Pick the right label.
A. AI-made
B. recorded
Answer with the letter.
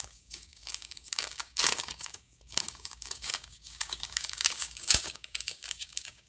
A